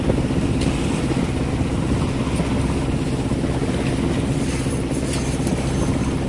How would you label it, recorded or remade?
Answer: recorded